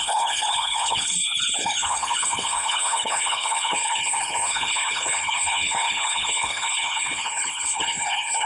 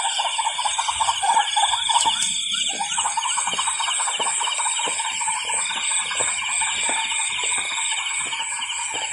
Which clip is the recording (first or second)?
second